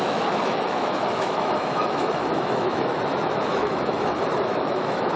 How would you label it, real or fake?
fake